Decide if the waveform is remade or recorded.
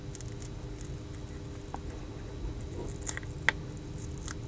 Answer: recorded